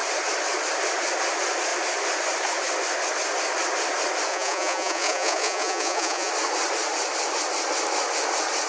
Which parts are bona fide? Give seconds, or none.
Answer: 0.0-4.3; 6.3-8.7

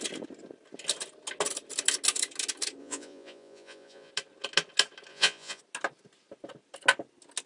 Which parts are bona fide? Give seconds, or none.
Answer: 0.0-2.8; 4.1-5.1; 5.6-7.5

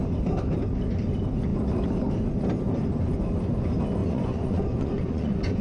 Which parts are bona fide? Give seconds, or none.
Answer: 0.0-4.0

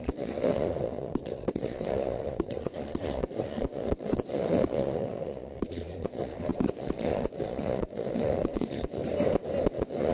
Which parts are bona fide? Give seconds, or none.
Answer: 9.0-9.7